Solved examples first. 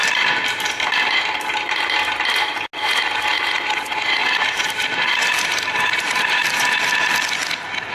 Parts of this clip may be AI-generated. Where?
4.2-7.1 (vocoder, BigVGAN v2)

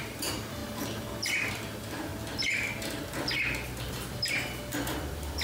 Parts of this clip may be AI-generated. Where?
0.0-0.6 (vocoder, BigVGAN v2); 1.5-2.1; 5.0-5.4

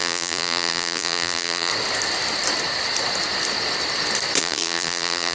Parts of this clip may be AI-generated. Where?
0.0-1.7 (vocoder, BigVGAN v2); 4.4-5.3

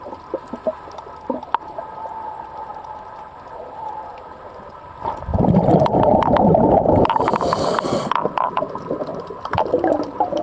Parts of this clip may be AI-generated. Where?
5.3-8.7 (vocoder, BigVGAN v2); 9.1-9.7

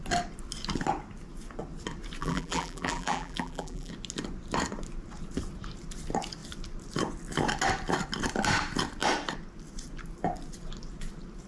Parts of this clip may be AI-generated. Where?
2.2-3.9 (vocoder, BigVGAN v2)

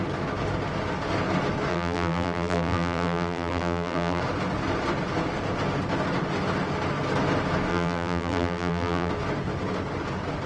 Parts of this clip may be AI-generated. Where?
1.7-4.2 (vocoder, BigVGAN v2); 7.7-9.1